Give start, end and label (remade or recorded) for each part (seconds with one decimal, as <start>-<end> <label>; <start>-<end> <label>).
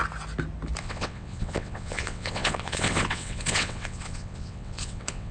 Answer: 0.0-0.8 recorded; 0.8-5.3 remade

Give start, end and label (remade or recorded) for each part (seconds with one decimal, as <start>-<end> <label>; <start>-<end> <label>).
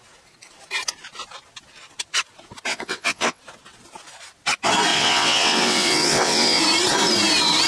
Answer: 0.0-2.7 recorded; 2.7-3.4 remade; 3.4-4.9 recorded; 4.9-6.6 remade; 6.6-7.7 recorded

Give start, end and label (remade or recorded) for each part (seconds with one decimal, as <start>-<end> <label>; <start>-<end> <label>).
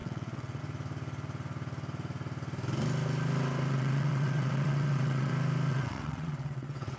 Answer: 0.0-0.6 remade; 0.6-3.7 recorded; 3.7-5.3 remade; 5.3-5.7 recorded; 5.7-7.0 remade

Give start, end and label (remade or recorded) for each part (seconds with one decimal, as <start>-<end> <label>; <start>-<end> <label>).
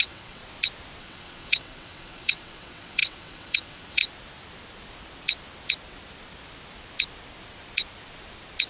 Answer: 0.0-0.4 remade; 0.4-1.0 recorded; 1.0-4.0 remade; 4.0-8.7 recorded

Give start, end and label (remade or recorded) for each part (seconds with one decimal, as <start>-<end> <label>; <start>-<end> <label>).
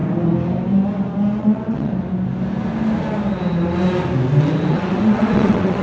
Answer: 0.0-1.4 recorded; 1.4-1.9 remade; 1.9-4.7 recorded; 4.7-5.8 remade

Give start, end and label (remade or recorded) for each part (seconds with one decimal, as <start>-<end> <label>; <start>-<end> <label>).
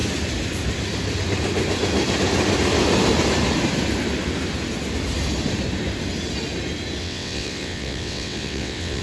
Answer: 0.0-7.0 recorded; 7.0-9.0 remade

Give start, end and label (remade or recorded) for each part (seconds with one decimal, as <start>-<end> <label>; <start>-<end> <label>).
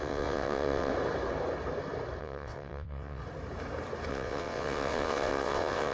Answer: 0.0-0.9 remade; 0.9-2.2 recorded; 2.2-3.2 remade; 3.2-4.1 recorded; 4.1-5.9 remade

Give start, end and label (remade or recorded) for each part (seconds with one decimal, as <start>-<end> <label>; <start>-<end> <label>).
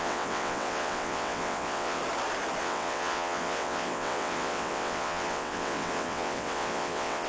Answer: 0.0-2.0 remade; 2.0-2.6 recorded; 2.6-7.3 remade